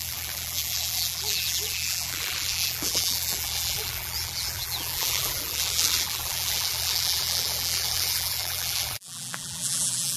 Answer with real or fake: fake